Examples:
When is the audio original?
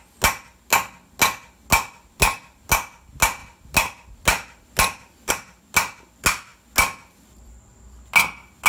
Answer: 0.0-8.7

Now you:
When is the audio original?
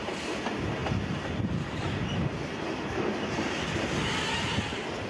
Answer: 0.0-5.1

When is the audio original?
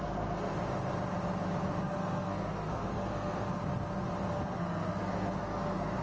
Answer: 0.5-1.8; 3.6-4.3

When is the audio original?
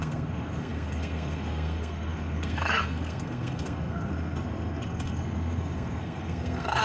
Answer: none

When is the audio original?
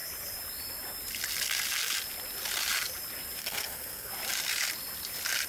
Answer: 0.0-3.4; 4.1-5.5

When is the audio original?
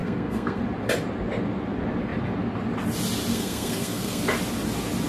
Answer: 0.6-3.3; 4.2-5.1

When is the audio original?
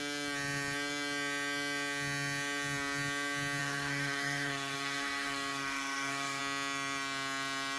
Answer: 0.0-3.6; 6.4-7.8